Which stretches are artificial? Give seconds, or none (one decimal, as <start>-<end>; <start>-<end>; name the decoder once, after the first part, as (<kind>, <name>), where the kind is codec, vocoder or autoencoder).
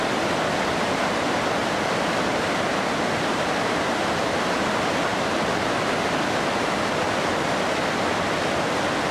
1.6-4.2 (vocoder, BigVGAN v2)